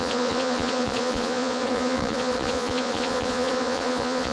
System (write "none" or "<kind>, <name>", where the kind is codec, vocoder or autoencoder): vocoder, Vocos